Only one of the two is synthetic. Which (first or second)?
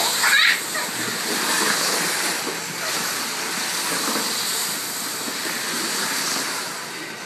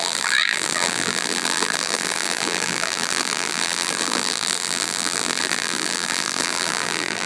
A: second